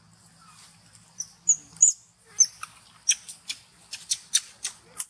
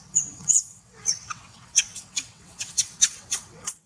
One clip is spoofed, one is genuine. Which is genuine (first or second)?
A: first